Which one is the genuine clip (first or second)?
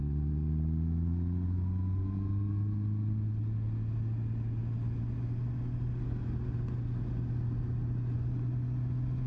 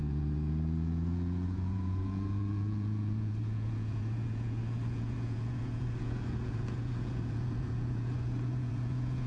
first